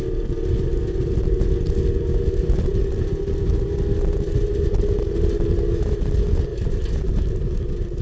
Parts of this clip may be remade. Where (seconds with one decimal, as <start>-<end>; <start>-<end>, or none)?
none